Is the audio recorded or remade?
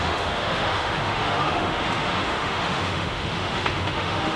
remade